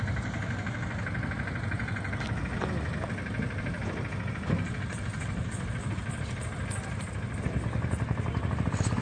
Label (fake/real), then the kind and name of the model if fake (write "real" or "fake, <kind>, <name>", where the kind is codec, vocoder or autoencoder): real